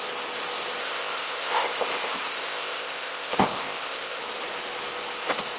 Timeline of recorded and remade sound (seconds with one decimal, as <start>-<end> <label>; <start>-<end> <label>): 0.0-0.8 recorded; 0.8-4.2 remade; 4.2-5.6 recorded